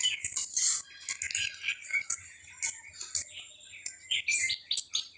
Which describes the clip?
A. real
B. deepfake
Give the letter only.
A